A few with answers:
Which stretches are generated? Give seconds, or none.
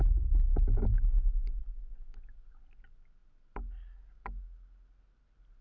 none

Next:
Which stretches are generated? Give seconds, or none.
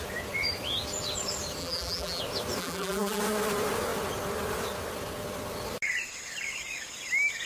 1.6-2.2 (vocoder, BigVGAN v2); 2.6-3.2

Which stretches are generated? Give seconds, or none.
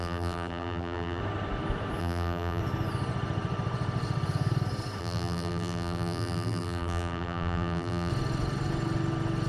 0.0-1.2 (vocoder, BigVGAN v2); 2.0-2.6; 5.0-8.1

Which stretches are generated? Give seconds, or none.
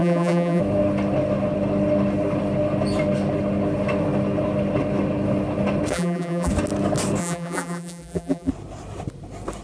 0.0-0.6 (vocoder, BigVGAN v2); 5.9-6.5; 7.2-8.5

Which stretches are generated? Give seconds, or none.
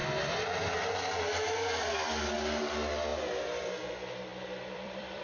4.3-5.2 (vocoder, BigVGAN v2)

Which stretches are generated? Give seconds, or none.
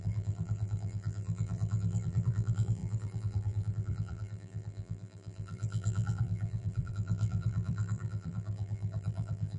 0.0-9.6 (vocoder, BigVGAN v2)